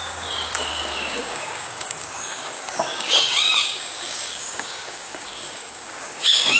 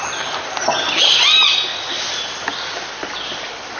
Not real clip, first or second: first